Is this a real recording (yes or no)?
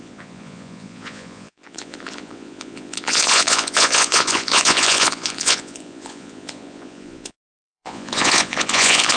no